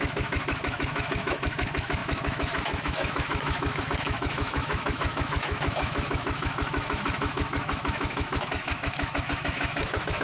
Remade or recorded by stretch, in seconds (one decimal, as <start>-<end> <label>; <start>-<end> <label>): 0.0-10.2 remade